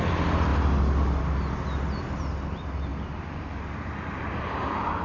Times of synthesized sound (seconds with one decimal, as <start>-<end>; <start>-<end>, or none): none

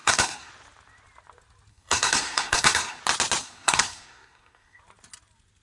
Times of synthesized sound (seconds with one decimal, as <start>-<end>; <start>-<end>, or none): 0.0-0.5; 1.7-3.0; 3.4-4.8

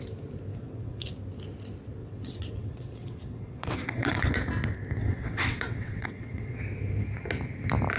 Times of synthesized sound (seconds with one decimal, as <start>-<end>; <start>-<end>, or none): 0.5-1.1; 2.0-4.3; 5.0-6.6

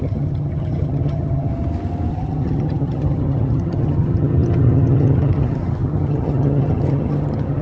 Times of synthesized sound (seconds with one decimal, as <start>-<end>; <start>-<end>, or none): 0.0-1.5; 2.1-7.6

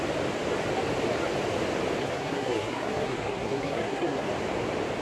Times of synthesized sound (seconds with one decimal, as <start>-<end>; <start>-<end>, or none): 2.0-4.3

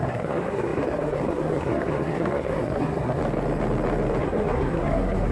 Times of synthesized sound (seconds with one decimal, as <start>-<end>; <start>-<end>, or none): 0.0-3.2; 4.2-5.3

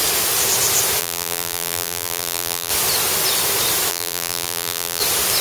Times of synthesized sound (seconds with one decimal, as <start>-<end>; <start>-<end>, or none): 1.0-2.7; 3.9-5.0